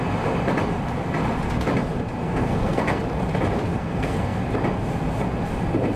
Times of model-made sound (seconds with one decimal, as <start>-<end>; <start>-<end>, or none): 2.2-3.0; 3.7-4.4

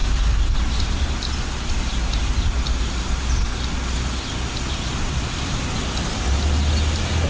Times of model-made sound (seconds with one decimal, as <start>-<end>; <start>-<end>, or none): none

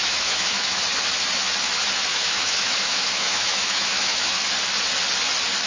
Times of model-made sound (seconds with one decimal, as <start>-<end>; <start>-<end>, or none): 0.0-0.8; 2.1-4.4

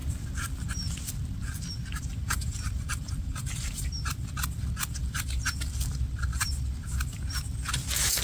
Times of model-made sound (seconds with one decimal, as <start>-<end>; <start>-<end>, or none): 2.2-4.1; 5.0-5.7; 6.3-7.1

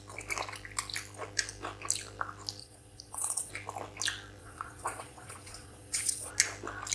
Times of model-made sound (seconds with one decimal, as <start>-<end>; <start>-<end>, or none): 2.6-3.5; 4.4-6.3

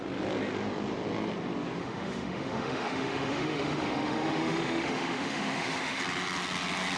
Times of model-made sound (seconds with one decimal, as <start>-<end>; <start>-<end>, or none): 1.8-6.0

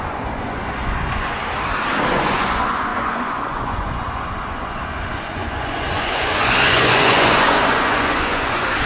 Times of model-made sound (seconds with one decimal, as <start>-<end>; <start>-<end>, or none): 0.0-1.4; 2.1-8.9